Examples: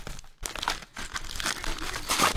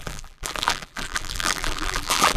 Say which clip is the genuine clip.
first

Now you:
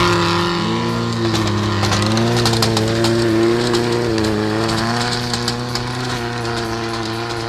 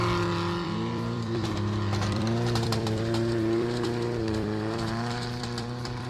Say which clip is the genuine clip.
first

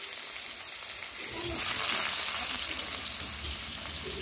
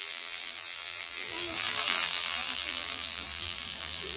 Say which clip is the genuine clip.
first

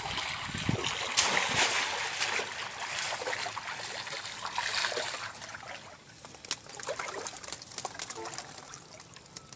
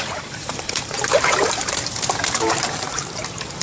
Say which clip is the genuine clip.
first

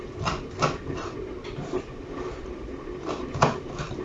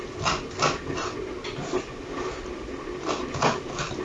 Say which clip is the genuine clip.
second